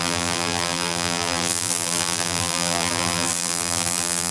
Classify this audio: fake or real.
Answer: fake